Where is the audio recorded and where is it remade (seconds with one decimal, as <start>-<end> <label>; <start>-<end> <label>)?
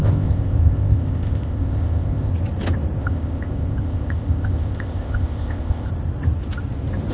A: 0.0-2.3 remade; 2.3-3.0 recorded; 3.0-5.9 remade; 5.9-7.1 recorded